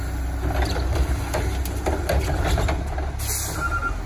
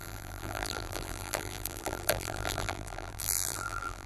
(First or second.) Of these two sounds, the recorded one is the first